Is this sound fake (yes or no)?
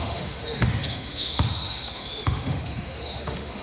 yes